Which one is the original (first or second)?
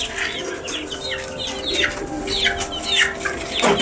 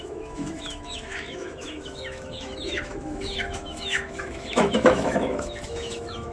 first